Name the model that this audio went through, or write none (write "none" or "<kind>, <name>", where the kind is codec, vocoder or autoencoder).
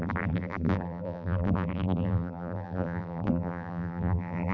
vocoder, BigVGAN v2